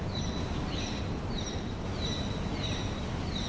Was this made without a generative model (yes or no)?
yes